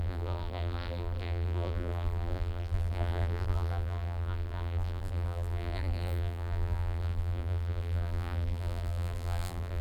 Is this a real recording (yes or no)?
no